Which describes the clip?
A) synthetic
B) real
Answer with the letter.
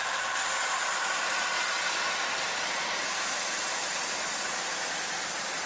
B